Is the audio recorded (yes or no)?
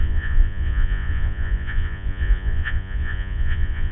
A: no